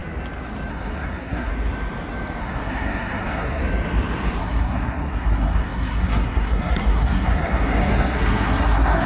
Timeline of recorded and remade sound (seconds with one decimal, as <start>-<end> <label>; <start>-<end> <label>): 0.0-0.7 recorded; 0.7-1.5 remade; 1.5-2.4 recorded; 2.4-3.6 remade; 3.6-4.4 recorded; 4.4-9.1 remade